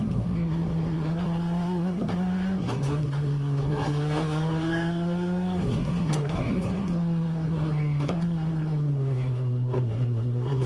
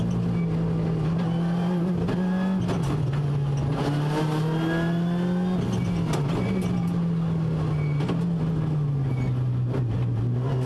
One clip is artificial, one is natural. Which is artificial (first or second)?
first